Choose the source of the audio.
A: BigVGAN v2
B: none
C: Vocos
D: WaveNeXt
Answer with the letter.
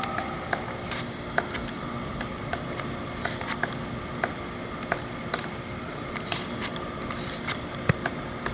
B